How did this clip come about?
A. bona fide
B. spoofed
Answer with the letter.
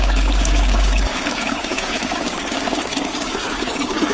B